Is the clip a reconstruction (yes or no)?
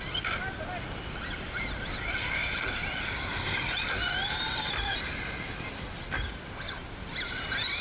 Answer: no